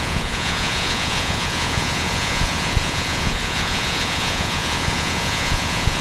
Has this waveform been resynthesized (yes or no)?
yes